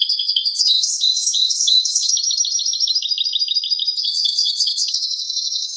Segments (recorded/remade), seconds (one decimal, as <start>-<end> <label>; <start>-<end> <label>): 0.0-2.1 remade; 2.1-4.0 recorded; 4.0-5.8 remade